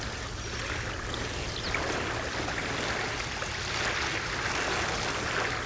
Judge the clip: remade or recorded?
recorded